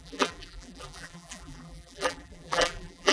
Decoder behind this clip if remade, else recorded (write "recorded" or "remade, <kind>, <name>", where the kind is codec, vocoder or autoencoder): remade, vocoder, BigVGAN v2